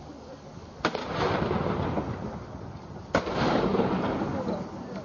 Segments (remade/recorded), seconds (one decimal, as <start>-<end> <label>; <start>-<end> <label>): 0.0-1.0 remade; 1.0-3.3 recorded; 3.3-5.0 remade